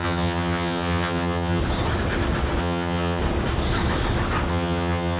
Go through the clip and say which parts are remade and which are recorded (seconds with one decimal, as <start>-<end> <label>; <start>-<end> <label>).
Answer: 0.0-1.6 remade; 1.6-2.6 recorded; 2.6-3.2 remade; 3.2-4.5 recorded; 4.5-5.2 remade